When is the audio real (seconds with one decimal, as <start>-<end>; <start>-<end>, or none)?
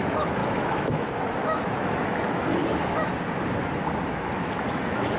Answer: 3.1-4.1